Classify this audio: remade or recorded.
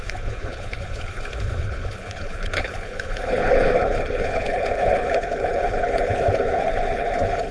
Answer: remade